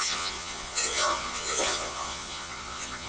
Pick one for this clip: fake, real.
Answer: fake